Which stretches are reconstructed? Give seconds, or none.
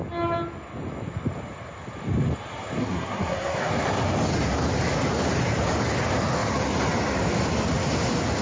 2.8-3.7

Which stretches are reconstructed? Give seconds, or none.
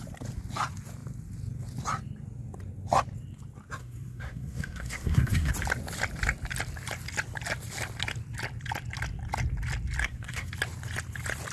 3.8-5.5; 10.0-10.5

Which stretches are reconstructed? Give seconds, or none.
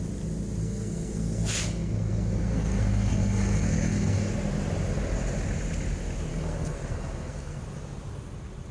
0.6-4.3; 6.3-7.6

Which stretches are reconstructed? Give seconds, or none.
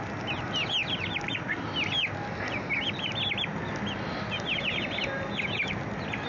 none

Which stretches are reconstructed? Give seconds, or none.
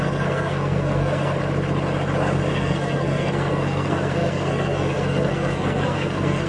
0.0-1.4; 2.5-6.5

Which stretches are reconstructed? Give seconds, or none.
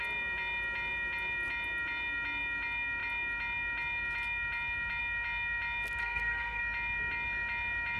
6.0-6.6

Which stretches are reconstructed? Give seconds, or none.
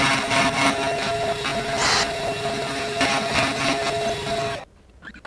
none